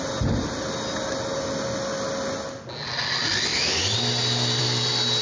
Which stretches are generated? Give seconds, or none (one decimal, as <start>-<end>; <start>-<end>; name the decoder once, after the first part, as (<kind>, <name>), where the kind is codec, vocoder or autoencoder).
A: none